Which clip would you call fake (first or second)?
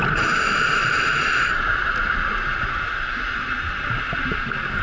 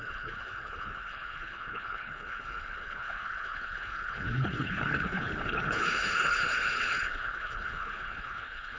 second